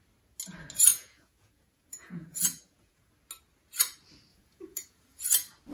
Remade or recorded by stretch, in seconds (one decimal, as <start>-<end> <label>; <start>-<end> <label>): 0.0-0.9 recorded; 0.9-3.1 remade; 3.1-4.3 recorded; 4.3-5.2 remade; 5.2-5.7 recorded